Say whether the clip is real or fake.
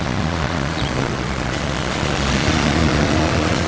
fake